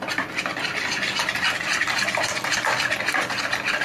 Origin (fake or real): real